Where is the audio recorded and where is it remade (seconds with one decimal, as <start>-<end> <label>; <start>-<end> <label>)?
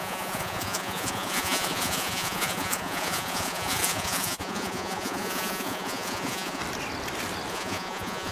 0.0-6.6 remade; 6.6-7.5 recorded; 7.5-8.3 remade